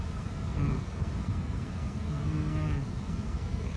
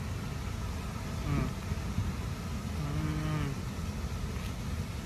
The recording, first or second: second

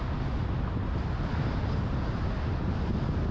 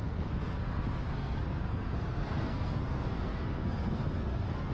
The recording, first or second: first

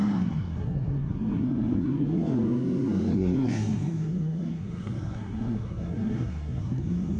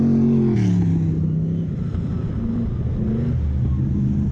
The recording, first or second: second